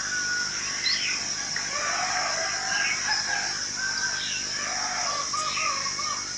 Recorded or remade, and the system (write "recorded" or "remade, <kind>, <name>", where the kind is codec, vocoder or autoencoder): recorded